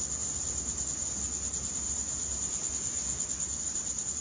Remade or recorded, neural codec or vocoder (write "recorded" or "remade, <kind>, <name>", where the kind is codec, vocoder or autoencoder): recorded